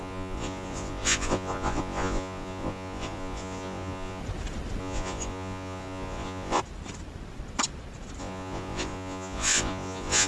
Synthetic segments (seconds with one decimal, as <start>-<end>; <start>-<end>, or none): 0.0-4.2; 4.8-6.6; 8.2-10.3